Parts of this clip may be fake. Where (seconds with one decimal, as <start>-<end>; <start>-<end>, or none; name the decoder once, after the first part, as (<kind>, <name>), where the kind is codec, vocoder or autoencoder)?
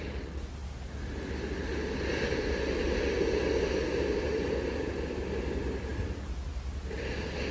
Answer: none